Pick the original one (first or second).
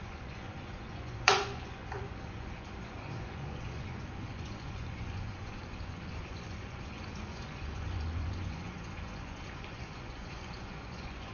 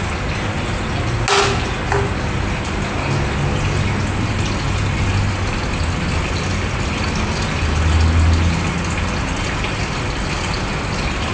second